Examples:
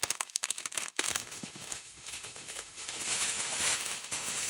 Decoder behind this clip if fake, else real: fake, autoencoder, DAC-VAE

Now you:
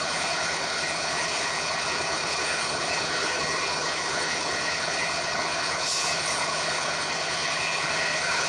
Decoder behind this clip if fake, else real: fake, codec, HILCodec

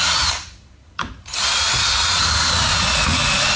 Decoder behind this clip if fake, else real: fake, vocoder, Vocos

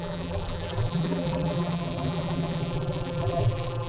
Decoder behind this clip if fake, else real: fake, vocoder, BigVGAN v2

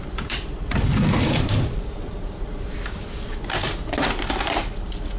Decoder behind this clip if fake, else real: fake, vocoder, BigVGAN v2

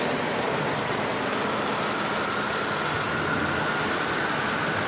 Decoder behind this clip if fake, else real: real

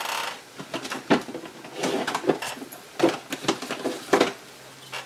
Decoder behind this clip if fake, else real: real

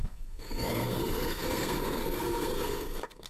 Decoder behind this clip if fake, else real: fake, codec, SNAC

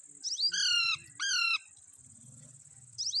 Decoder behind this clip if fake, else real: real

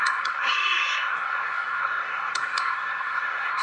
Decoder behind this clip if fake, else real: fake, codec, SNAC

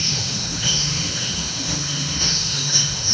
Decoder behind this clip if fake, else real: fake, autoencoder, DAC-VAE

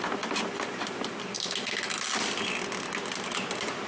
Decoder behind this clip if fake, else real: real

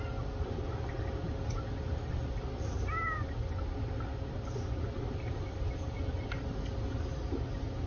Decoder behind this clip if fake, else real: real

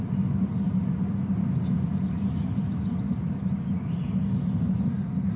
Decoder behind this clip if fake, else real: real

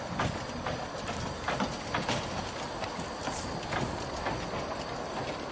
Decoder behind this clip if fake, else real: real